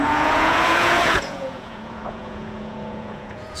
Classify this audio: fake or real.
fake